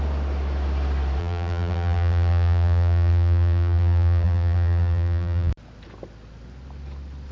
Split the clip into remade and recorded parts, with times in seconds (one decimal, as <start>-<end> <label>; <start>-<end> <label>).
0.0-1.2 recorded; 1.2-5.5 remade; 5.5-7.3 recorded